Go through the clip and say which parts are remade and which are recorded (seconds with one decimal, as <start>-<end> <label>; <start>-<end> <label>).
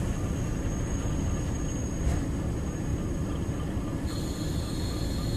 0.0-5.4 recorded